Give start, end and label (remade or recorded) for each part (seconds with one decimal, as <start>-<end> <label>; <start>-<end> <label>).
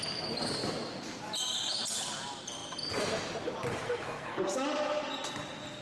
0.0-3.7 recorded; 3.7-4.4 remade; 4.4-5.8 recorded